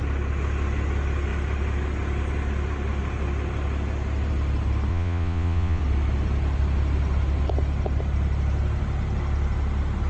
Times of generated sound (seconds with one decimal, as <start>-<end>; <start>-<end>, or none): 4.9-5.8